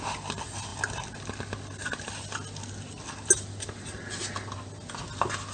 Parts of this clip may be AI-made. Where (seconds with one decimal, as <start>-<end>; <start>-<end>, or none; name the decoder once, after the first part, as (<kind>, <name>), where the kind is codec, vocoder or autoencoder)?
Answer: none